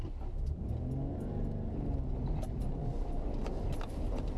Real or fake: real